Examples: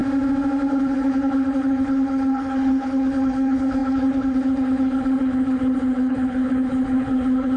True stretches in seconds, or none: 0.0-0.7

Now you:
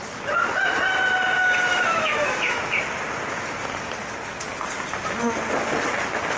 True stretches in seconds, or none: 0.0-1.7; 2.6-6.4

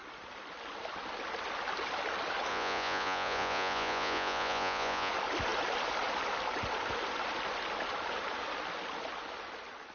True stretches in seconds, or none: 0.0-2.5; 5.1-9.9

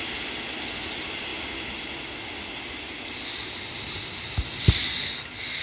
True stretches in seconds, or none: 0.0-5.6